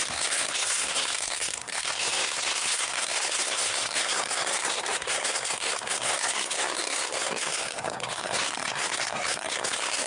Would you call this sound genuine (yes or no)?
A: no